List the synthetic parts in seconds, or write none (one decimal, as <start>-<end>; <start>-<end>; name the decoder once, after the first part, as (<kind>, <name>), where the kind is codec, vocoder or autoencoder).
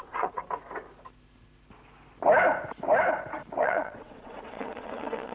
0.0-0.4 (vocoder, WaveNeXt); 3.6-5.3